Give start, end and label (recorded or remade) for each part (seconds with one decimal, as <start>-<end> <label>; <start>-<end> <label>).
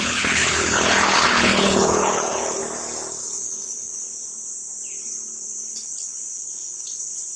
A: 0.0-2.6 remade; 2.6-3.2 recorded; 3.2-3.9 remade; 3.9-5.7 recorded; 5.7-7.4 remade